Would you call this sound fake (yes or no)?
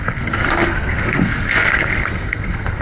yes